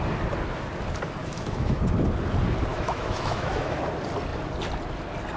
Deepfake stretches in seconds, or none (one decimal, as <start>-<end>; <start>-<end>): 1.2-1.8; 2.7-3.8